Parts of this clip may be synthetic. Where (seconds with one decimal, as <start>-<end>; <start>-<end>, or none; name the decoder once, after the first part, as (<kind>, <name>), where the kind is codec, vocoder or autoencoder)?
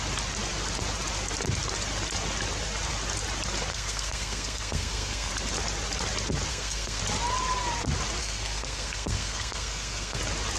3.7-5.3 (codec, SNAC); 6.5-7.0; 8.2-10.2